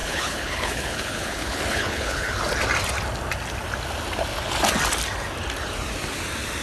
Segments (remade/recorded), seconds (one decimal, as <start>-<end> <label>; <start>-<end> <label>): 0.0-2.4 remade; 2.4-6.6 recorded